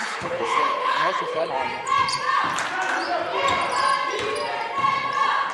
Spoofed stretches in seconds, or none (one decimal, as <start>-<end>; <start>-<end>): 0.0-1.5